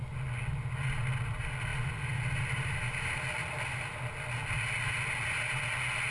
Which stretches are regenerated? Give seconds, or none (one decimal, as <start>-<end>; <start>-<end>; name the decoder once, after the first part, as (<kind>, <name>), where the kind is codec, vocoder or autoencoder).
none